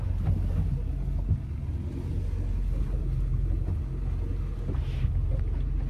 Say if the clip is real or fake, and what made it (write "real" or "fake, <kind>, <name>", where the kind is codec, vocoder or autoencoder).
real